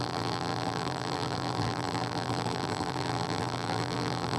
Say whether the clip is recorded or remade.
remade